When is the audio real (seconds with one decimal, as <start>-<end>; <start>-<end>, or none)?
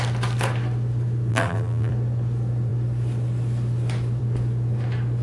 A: 0.0-1.3; 1.9-5.2